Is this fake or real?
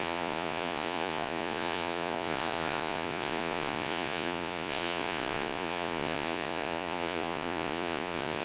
fake